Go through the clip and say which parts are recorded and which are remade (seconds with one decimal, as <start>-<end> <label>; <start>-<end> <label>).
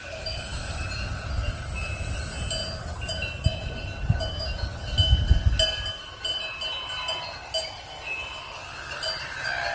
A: 0.0-9.7 recorded